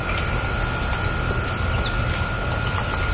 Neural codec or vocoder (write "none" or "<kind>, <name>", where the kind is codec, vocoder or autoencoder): none